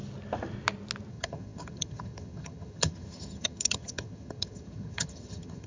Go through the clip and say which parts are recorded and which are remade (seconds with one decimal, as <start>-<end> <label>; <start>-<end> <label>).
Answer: 0.0-1.1 recorded; 1.1-5.7 remade